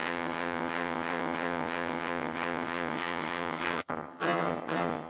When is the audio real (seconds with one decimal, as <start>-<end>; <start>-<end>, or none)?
none